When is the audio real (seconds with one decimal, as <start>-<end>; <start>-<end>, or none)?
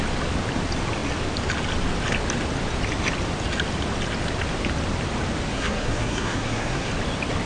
0.0-5.5; 6.9-7.5